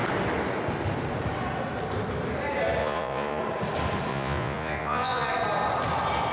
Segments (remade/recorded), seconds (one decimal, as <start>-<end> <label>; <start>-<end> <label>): 0.0-2.8 recorded; 2.8-3.4 remade; 3.4-4.1 recorded; 4.1-5.3 remade; 5.3-6.3 recorded